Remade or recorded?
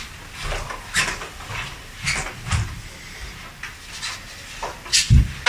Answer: recorded